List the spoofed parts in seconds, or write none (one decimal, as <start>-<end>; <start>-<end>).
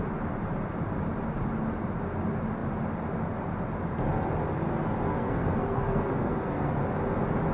5.1-6.8